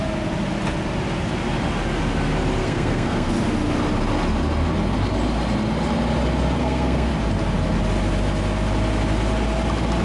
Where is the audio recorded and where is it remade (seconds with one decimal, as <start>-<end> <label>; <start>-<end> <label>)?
0.0-2.6 recorded; 2.6-3.3 remade; 3.3-6.6 recorded; 6.6-7.1 remade; 7.1-10.0 recorded